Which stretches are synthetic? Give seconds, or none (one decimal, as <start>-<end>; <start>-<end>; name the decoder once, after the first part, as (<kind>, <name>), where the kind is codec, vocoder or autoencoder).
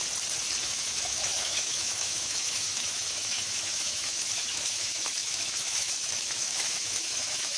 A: 0.6-7.6 (autoencoder, DAC-VAE)